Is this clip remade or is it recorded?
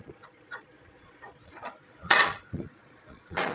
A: remade